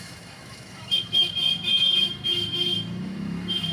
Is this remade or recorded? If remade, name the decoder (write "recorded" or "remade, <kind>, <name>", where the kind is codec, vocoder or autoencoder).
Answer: remade, autoencoder, DAC-VAE